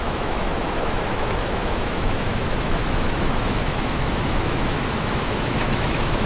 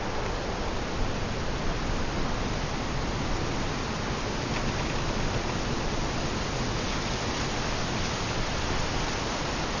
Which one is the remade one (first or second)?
first